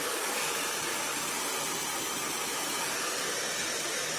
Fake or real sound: real